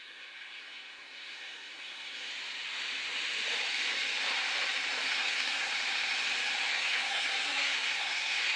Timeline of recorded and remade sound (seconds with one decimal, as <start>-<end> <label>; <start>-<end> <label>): 0.0-2.3 remade; 2.3-5.1 recorded; 5.1-5.7 remade; 5.7-6.7 recorded; 6.7-8.6 remade